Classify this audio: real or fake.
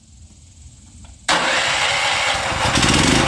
real